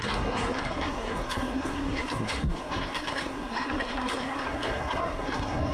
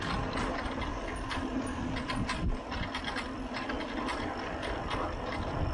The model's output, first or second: first